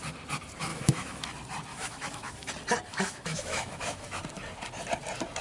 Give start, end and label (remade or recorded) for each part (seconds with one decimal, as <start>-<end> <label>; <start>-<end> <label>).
0.0-0.7 recorded; 0.7-1.2 remade; 1.2-1.7 recorded; 1.7-2.5 remade; 2.5-2.9 recorded; 2.9-4.2 remade; 4.2-5.4 recorded